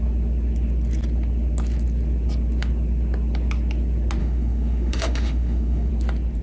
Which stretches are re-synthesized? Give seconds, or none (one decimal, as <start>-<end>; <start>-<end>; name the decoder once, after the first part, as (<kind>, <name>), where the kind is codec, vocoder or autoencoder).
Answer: 4.2-5.9 (autoencoder, DAC-VAE)